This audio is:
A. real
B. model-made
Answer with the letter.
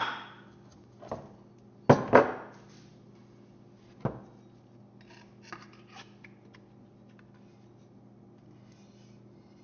A